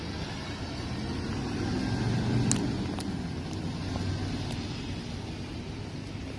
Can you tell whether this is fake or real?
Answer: real